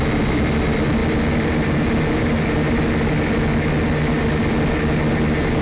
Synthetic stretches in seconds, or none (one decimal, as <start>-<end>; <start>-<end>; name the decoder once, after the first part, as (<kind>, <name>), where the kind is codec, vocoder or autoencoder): none